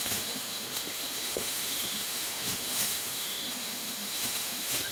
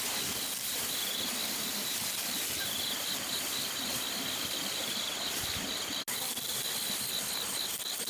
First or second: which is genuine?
second